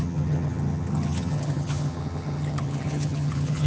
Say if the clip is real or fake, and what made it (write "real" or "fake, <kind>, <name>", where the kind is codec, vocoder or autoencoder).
fake, vocoder, HiFi-GAN